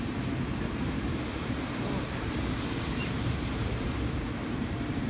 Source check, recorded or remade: remade